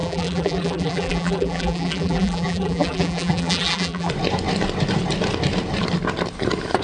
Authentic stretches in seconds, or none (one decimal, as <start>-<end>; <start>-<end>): 4.1-6.8